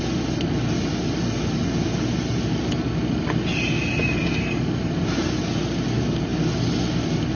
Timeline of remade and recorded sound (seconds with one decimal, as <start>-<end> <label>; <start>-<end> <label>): 0.0-7.3 recorded